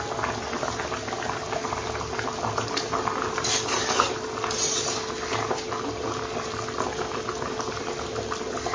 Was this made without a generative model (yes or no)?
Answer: yes